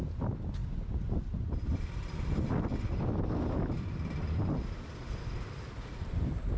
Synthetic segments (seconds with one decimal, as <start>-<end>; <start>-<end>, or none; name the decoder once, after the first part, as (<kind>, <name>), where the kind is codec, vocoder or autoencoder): none